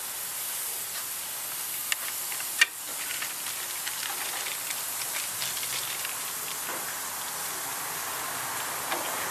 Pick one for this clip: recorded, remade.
recorded